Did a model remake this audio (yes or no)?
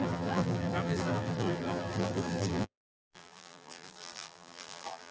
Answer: yes